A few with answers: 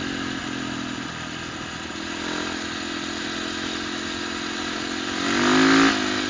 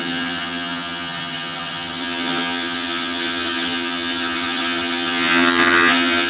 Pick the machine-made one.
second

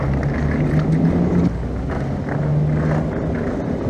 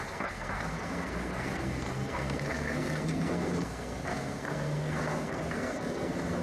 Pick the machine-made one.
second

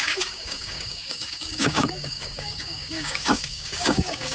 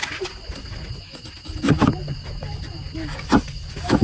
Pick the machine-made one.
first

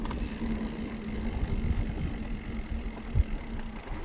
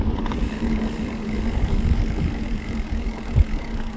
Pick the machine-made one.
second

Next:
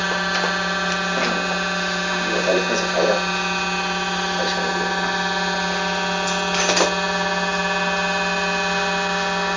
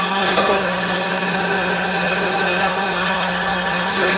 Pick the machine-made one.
second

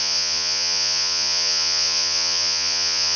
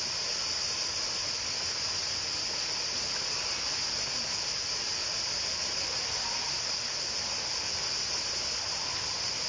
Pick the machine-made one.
first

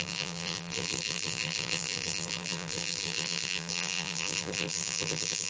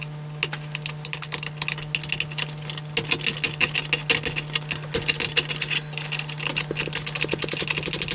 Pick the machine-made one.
first